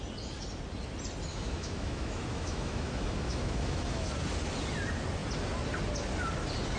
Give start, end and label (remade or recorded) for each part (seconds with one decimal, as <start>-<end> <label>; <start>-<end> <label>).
0.0-1.3 recorded; 1.3-4.1 remade; 4.1-6.8 recorded